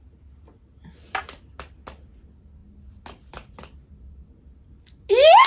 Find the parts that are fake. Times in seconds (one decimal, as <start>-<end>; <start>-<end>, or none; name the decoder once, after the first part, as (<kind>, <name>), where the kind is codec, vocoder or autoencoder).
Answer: none

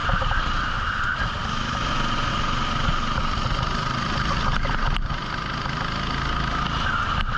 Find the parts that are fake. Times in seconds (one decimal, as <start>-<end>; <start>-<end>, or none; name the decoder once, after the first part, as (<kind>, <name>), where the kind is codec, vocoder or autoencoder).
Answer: none

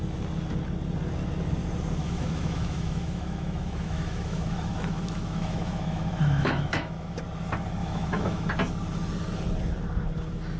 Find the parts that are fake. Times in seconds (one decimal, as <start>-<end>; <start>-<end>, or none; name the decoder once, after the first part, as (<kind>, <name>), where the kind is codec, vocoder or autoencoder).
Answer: 2.0-7.2 (autoencoder, DAC-VAE); 7.8-8.5

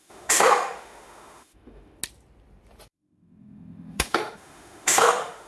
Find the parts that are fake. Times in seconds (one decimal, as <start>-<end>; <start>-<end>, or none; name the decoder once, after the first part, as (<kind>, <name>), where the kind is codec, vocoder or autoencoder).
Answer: 0.0-2.0 (autoencoder, DAC-VAE); 2.9-5.5